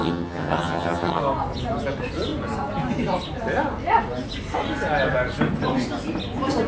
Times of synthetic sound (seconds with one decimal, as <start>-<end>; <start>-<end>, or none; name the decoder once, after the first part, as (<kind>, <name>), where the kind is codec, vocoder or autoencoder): 0.0-1.2 (vocoder, HiFi-GAN)